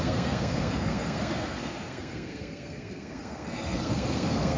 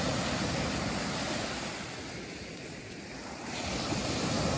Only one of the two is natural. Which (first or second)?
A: second